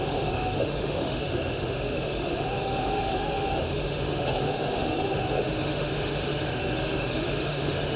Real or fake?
fake